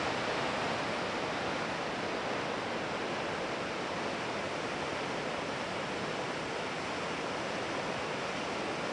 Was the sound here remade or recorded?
recorded